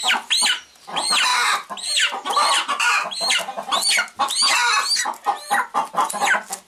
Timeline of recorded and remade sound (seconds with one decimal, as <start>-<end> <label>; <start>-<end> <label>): 0.0-6.7 recorded